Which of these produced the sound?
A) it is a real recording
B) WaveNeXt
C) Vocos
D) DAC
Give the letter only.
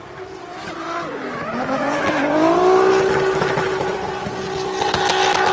A